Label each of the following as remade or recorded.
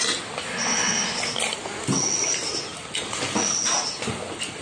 recorded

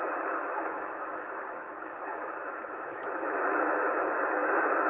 remade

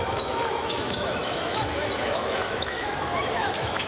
remade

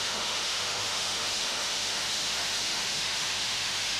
remade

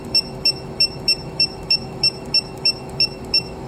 remade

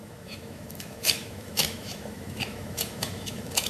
remade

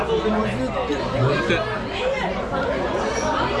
recorded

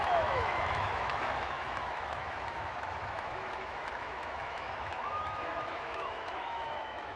remade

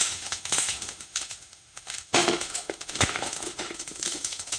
remade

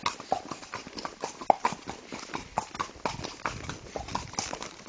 recorded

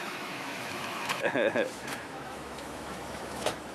remade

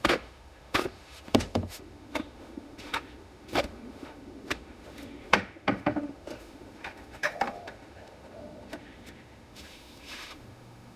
remade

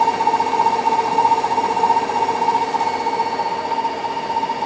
recorded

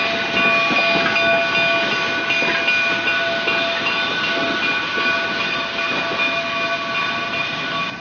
recorded